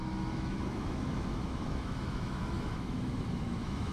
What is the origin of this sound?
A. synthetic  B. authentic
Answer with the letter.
A